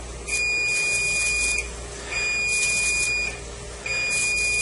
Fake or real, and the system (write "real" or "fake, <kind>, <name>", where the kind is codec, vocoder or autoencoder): real